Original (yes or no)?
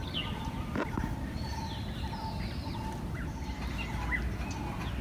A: yes